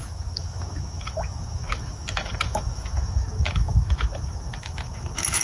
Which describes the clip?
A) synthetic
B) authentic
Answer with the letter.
A